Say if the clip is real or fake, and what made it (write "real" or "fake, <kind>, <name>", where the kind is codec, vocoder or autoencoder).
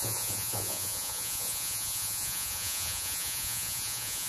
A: fake, vocoder, Vocos